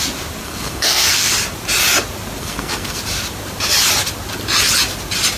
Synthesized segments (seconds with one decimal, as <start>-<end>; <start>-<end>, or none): 0.4-1.3; 2.4-3.0